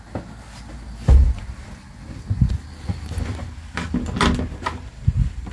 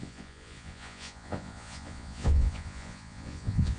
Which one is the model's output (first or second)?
second